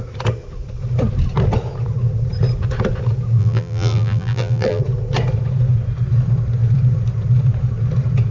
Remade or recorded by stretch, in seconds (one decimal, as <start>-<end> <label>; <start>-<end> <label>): 0.0-3.4 recorded; 3.4-4.8 remade; 4.8-8.3 recorded

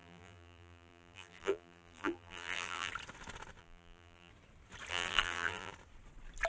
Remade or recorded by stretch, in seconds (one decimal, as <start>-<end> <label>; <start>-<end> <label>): 0.0-2.9 remade; 2.9-3.6 recorded; 3.6-4.3 remade; 4.3-4.9 recorded; 4.9-5.7 remade; 5.7-6.5 recorded

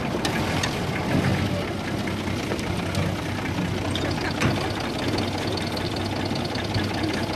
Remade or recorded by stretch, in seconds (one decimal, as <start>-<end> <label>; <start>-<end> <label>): 0.0-7.4 recorded

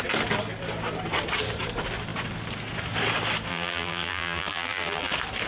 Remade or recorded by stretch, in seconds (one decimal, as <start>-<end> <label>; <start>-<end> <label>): 0.0-3.5 recorded; 3.5-5.1 remade; 5.1-5.5 recorded

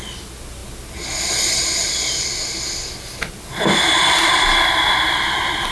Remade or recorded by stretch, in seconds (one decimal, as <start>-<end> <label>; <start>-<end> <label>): 0.0-5.7 recorded

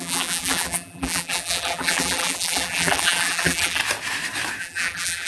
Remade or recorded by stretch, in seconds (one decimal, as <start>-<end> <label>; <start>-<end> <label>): 0.0-3.8 remade; 3.8-4.6 recorded; 4.6-5.3 remade

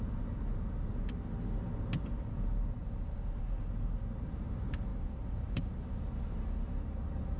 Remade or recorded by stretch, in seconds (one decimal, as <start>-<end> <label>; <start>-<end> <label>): 0.0-2.8 recorded; 2.8-3.4 remade; 3.4-4.9 recorded; 4.9-5.6 remade; 5.6-7.4 recorded